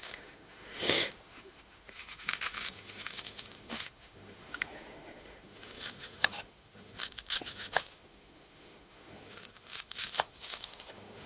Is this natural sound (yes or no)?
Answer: no